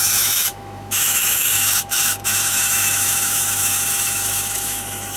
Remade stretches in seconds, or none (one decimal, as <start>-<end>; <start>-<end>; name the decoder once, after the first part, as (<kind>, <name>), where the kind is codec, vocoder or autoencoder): 0.0-5.2 (autoencoder, DAC-VAE)